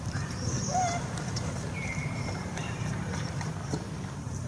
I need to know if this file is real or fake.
fake